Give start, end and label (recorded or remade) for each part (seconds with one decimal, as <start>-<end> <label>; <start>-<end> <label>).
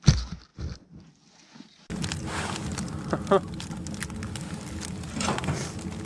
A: 0.0-6.1 recorded